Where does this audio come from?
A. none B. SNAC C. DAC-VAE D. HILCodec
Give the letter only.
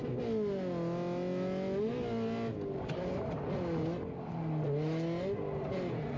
A